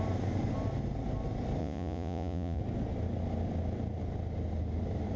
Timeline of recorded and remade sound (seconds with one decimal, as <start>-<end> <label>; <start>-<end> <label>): 0.0-1.6 recorded; 1.6-2.6 remade; 2.6-5.2 recorded